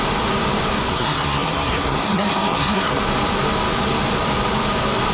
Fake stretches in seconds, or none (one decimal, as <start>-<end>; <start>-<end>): 0.9-3.0